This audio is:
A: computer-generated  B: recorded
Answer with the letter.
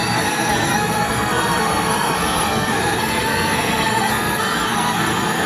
A